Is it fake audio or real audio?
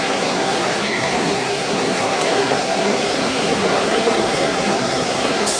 fake